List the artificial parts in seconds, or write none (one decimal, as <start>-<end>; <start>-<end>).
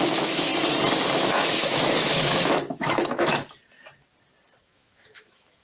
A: 0.0-0.5; 1.2-3.3; 4.6-5.6